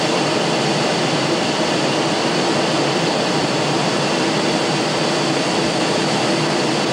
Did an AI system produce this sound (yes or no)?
yes